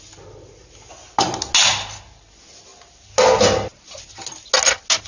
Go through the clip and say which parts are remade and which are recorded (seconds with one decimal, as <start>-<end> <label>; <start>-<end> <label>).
0.0-5.1 recorded